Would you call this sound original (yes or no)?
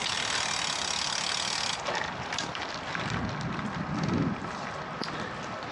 yes